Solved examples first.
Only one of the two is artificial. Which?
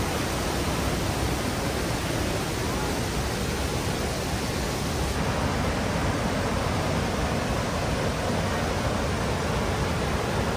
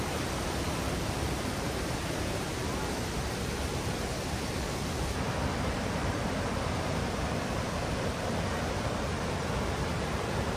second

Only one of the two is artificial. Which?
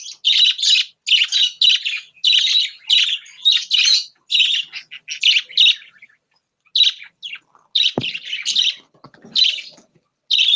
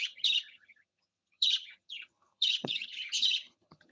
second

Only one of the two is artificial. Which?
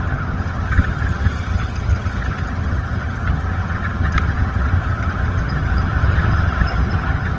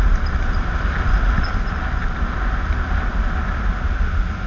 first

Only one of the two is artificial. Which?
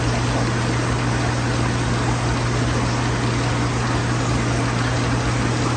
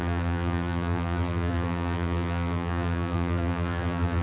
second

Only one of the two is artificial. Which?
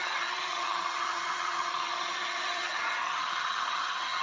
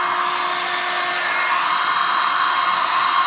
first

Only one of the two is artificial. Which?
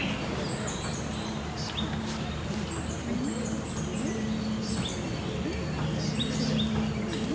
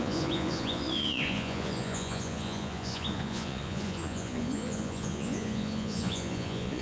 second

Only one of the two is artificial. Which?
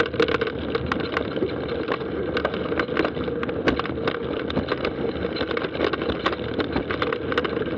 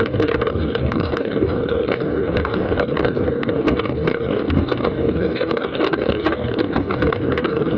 second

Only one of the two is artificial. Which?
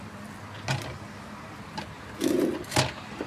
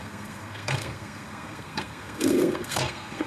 second